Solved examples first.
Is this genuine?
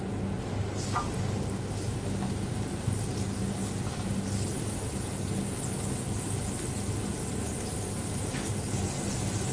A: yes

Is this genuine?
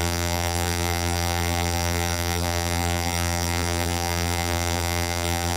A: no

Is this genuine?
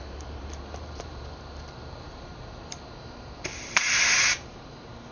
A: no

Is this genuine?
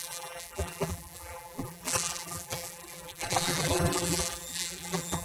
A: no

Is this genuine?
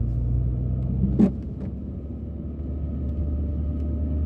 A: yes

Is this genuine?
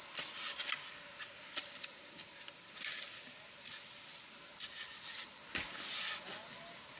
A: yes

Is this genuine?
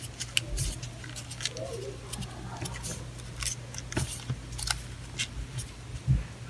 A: yes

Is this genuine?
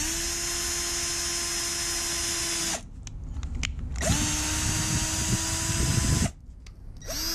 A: yes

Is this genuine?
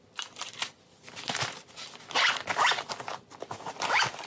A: yes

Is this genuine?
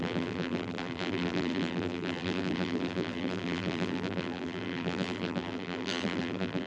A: no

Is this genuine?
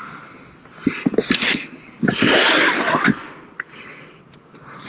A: yes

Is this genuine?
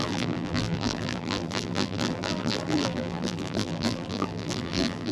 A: no